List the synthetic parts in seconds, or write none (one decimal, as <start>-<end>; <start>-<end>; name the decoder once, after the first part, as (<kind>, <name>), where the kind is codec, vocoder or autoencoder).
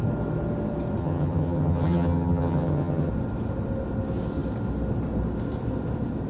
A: 1.0-3.1 (vocoder, HiFi-GAN)